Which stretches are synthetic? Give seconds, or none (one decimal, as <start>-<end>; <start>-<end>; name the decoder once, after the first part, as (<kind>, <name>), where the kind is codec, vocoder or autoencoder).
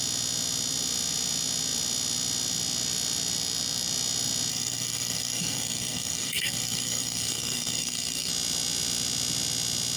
4.5-8.3 (codec, SNAC)